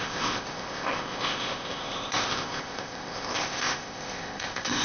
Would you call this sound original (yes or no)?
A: no